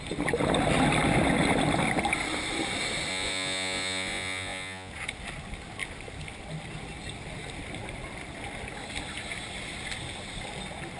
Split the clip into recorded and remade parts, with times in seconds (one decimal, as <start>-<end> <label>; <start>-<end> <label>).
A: 0.0-3.1 recorded; 3.1-4.9 remade; 4.9-11.0 recorded